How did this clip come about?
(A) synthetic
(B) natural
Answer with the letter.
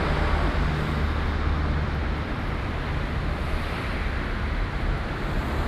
B